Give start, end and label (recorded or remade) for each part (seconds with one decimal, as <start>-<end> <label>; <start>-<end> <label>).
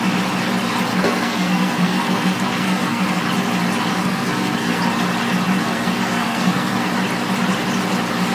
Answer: 0.0-0.9 recorded; 0.9-3.2 remade; 3.2-3.9 recorded; 3.9-4.8 remade; 4.8-5.6 recorded; 5.6-6.9 remade; 6.9-8.3 recorded